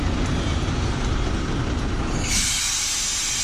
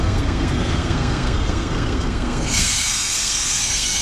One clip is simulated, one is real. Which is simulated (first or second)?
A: second